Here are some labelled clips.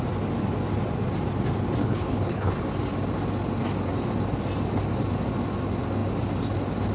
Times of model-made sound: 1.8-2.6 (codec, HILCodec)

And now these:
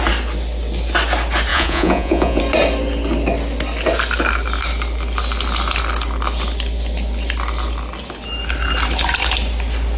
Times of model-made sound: 1.5-2.4 (vocoder, Vocos)

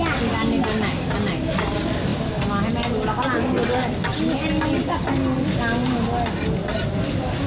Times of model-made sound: none